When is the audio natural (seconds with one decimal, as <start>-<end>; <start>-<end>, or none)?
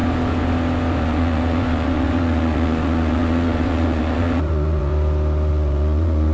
0.0-1.0; 4.9-5.5